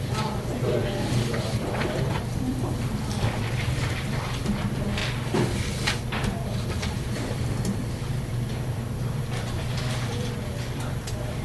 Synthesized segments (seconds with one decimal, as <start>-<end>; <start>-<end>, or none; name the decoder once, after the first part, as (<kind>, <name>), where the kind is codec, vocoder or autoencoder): 0.0-11.4 (vocoder, BigVGAN v2)